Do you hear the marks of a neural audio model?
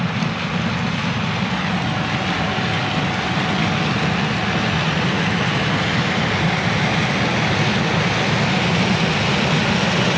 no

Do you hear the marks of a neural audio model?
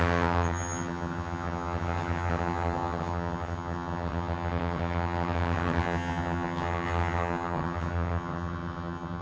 yes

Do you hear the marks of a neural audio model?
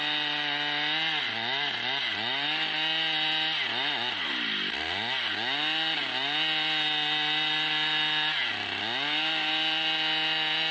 no